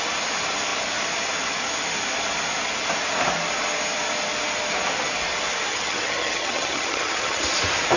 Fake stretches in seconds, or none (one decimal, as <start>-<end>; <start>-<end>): 5.7-7.4